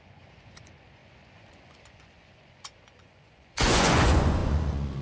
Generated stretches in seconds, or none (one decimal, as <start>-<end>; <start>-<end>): 0.0-5.0